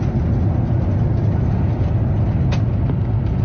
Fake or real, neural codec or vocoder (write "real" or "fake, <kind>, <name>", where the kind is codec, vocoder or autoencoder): real